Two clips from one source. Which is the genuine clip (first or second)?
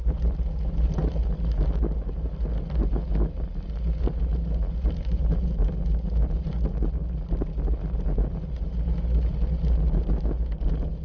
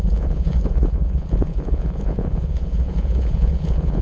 first